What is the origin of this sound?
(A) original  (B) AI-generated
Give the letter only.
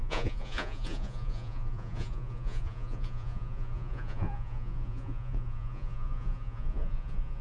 B